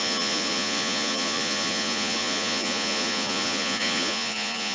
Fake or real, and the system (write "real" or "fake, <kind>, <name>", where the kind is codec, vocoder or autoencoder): fake, vocoder, Vocos